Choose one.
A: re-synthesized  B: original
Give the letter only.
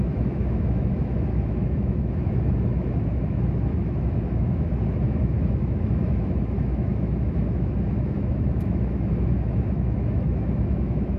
A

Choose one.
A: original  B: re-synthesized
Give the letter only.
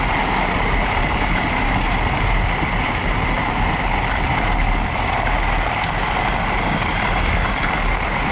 A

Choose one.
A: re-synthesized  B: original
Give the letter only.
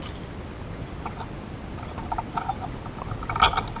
B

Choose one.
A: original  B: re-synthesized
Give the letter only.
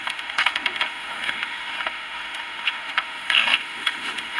B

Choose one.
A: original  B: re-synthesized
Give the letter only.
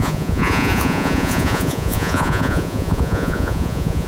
B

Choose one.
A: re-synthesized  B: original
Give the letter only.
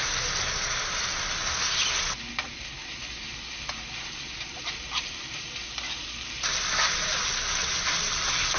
B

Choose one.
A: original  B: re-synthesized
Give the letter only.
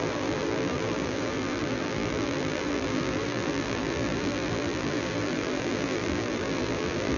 B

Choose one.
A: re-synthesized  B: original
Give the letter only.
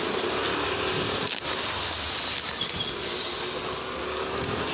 B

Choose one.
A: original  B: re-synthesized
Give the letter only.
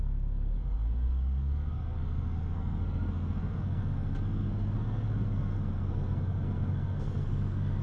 B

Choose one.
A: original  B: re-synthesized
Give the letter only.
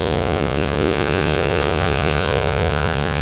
B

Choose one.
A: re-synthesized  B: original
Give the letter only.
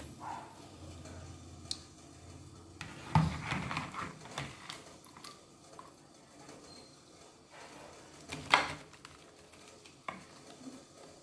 B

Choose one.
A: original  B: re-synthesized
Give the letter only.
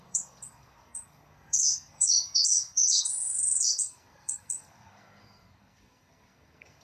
B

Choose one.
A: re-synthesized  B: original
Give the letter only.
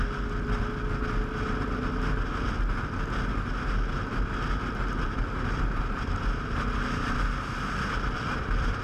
B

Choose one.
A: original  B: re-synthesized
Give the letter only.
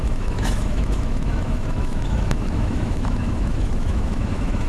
B